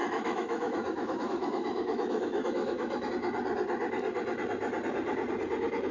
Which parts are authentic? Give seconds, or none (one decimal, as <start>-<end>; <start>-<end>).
3.1-5.9